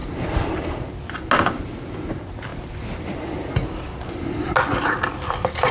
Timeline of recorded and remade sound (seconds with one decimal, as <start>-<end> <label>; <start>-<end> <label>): 0.0-5.7 recorded